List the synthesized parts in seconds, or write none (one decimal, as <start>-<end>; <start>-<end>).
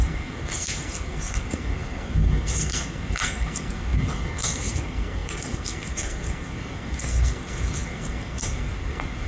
0.0-9.3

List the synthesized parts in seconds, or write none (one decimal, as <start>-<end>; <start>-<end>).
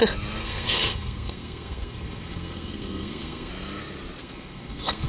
0.4-3.5; 4.2-5.1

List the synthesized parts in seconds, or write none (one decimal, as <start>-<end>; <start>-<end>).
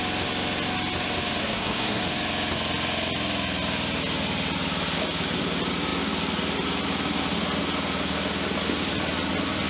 1.4-2.0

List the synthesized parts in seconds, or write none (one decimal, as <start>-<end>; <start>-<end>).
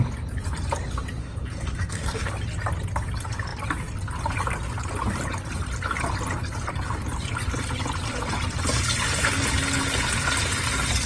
1.2-2.3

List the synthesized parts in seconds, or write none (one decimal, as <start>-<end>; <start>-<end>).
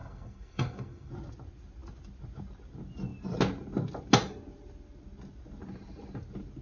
0.0-1.1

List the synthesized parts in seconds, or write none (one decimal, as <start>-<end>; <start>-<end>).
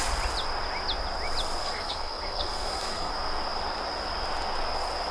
1.6-3.1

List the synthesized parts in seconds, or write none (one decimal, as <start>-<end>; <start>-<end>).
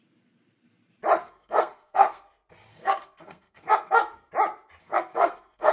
1.2-2.3; 2.7-4.3; 4.8-5.7